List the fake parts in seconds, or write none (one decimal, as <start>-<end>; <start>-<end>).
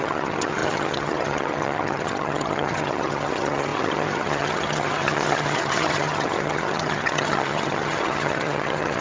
0.0-9.0